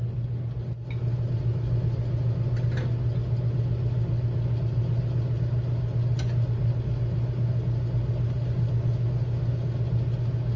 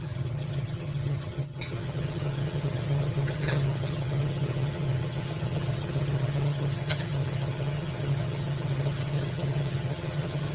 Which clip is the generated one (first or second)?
second